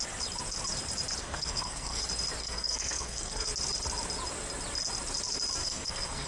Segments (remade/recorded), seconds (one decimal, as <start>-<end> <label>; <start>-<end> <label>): 0.0-1.2 recorded; 1.2-2.0 remade; 2.0-2.4 recorded; 2.4-3.5 remade; 3.5-5.6 recorded; 5.6-6.3 remade